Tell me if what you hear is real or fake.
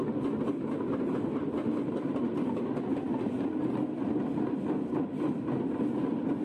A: real